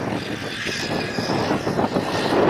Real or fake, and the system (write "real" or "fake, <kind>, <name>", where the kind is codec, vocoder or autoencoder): real